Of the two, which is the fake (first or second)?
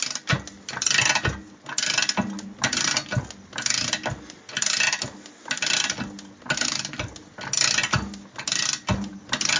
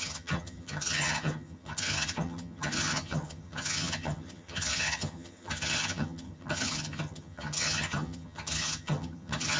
second